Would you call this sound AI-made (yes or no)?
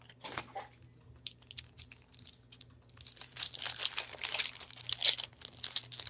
no